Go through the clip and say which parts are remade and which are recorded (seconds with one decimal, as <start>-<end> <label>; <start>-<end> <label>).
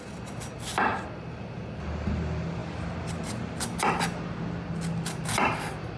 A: 0.0-6.0 recorded